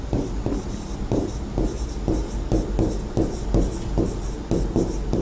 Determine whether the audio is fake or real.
real